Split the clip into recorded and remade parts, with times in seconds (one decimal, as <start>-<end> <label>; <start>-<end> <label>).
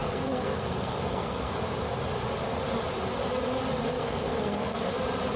0.0-1.5 remade; 1.5-3.9 recorded; 3.9-4.9 remade; 4.9-5.4 recorded